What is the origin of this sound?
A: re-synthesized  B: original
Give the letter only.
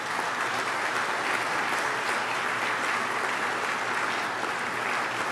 B